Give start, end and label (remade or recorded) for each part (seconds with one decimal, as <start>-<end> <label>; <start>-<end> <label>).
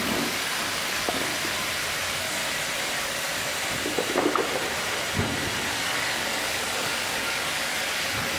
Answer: 0.0-1.3 remade; 1.3-2.0 recorded; 2.0-2.4 remade; 2.4-3.0 recorded; 3.0-3.5 remade; 3.5-5.7 recorded; 5.7-8.4 remade